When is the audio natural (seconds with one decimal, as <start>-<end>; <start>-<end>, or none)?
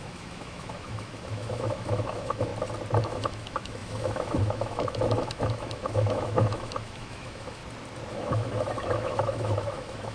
2.5-3.0; 7.6-8.1